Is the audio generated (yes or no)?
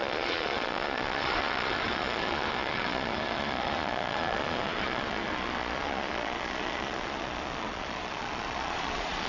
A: yes